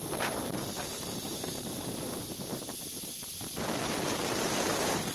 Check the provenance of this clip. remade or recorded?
remade